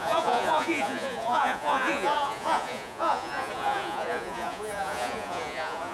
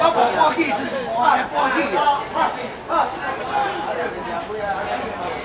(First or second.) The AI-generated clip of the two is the first